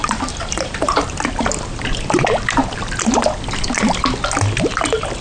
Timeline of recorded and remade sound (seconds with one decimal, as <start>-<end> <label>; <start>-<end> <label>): 0.0-1.1 remade; 1.1-5.2 recorded